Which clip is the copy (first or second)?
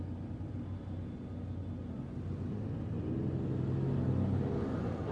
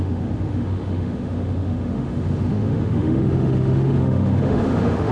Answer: second